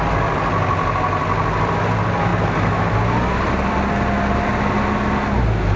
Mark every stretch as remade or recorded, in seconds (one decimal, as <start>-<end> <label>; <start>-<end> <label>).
0.0-5.8 recorded